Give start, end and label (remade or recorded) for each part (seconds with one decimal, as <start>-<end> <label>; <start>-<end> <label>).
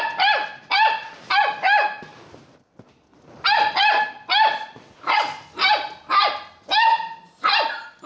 0.0-8.1 recorded